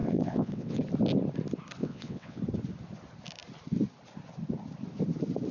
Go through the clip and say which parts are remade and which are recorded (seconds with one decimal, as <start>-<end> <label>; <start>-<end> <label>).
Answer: 0.0-0.8 remade; 0.8-1.8 recorded; 1.8-2.4 remade; 2.4-5.5 recorded